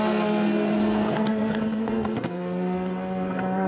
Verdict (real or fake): fake